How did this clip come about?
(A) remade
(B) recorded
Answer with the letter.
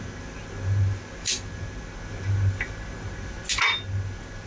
B